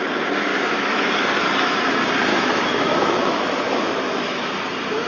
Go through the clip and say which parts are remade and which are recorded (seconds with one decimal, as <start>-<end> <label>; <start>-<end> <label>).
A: 0.0-0.5 recorded; 0.5-1.1 remade; 1.1-2.3 recorded; 2.3-4.5 remade; 4.5-5.1 recorded